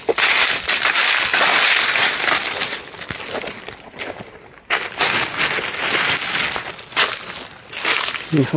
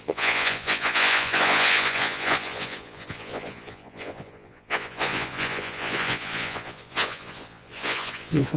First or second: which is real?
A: first